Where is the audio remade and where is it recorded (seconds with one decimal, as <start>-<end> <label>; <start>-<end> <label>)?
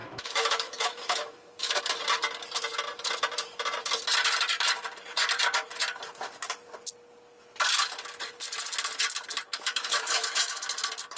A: 0.0-1.8 remade; 1.8-9.5 recorded; 9.5-10.6 remade; 10.6-11.2 recorded